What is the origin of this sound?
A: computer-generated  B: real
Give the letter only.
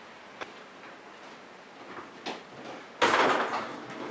B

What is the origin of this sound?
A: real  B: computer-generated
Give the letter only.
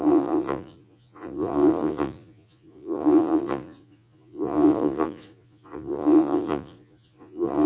B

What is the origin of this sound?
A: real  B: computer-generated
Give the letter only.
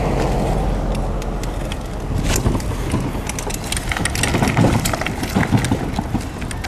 A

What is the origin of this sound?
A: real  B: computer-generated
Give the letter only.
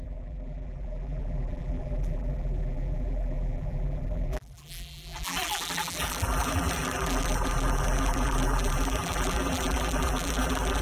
B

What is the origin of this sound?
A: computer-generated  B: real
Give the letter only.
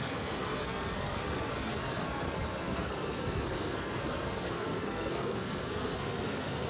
A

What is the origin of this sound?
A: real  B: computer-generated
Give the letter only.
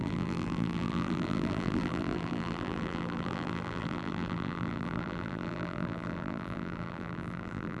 B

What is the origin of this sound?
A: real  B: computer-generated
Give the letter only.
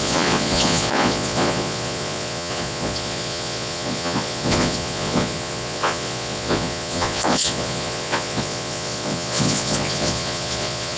B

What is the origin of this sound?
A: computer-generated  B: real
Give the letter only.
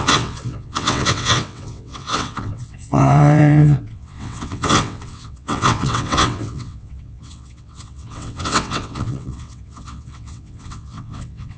A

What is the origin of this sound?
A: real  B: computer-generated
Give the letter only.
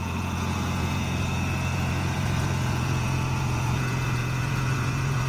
B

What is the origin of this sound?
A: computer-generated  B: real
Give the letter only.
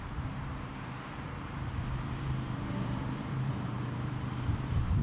A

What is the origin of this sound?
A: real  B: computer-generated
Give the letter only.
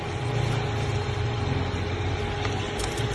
A